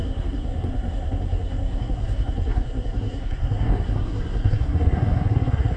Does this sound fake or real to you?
fake